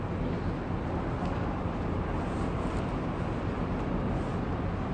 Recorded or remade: recorded